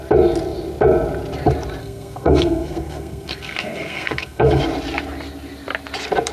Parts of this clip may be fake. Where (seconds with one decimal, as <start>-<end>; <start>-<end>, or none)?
1.8-4.6